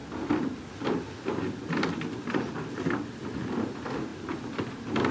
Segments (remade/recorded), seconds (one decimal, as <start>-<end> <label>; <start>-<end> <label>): 0.0-5.1 recorded